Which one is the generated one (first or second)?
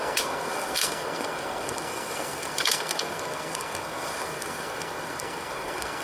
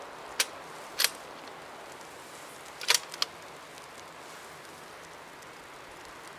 first